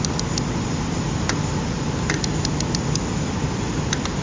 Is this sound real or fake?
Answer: real